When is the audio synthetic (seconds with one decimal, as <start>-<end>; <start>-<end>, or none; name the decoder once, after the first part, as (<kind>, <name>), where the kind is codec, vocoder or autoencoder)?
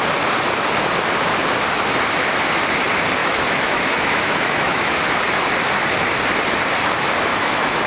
3.2-5.0 (autoencoder, DAC-VAE); 7.3-7.9